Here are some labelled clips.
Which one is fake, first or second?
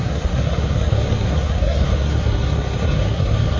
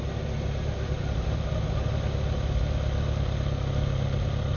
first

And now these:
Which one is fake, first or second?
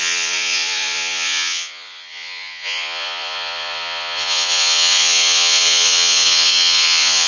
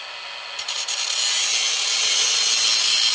first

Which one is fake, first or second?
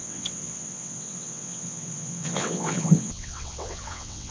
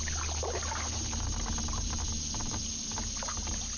first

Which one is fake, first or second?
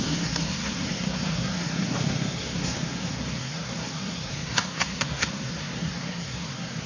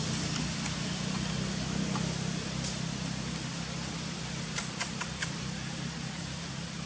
first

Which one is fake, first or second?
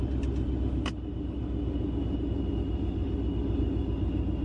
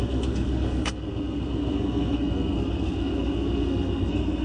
second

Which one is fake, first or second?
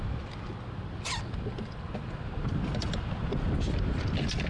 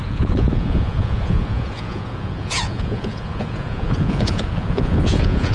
second